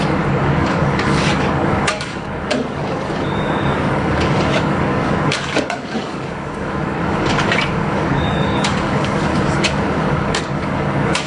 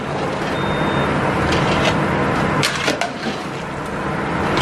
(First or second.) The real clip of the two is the second